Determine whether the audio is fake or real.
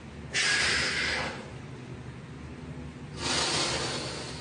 real